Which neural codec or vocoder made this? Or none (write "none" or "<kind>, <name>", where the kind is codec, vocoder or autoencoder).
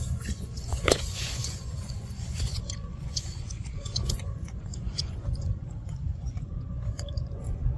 vocoder, Vocos